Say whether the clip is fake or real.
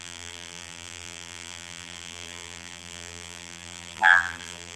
fake